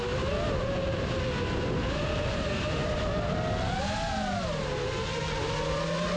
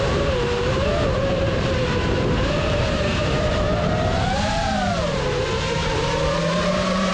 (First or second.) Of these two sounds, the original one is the first